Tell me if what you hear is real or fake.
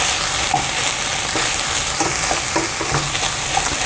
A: real